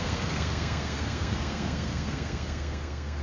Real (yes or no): no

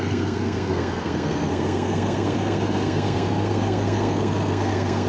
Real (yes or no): no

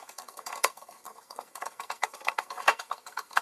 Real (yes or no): no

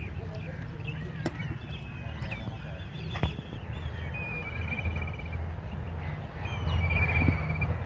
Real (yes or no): yes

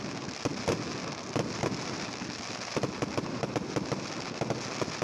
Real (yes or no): yes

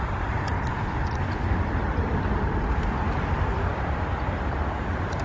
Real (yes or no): yes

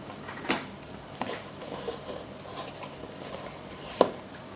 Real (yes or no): no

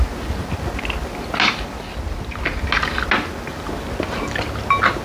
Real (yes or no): yes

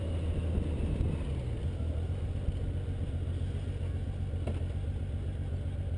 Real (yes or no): yes